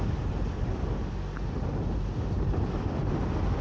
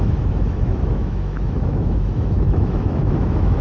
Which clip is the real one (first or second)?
first